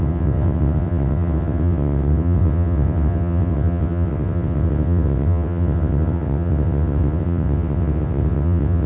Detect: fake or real fake